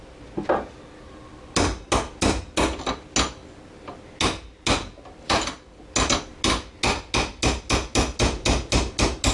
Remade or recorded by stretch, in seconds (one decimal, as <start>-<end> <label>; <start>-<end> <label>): 0.0-9.3 recorded